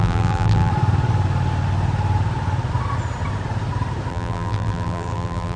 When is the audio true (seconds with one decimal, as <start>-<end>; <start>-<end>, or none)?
0.7-4.1